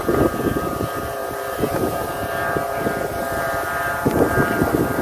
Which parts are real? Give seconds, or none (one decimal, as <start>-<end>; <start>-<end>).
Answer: none